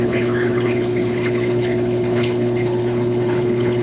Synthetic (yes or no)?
yes